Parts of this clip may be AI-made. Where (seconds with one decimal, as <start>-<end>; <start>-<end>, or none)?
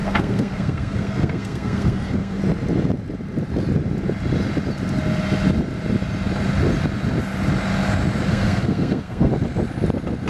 0.0-2.4; 8.3-9.3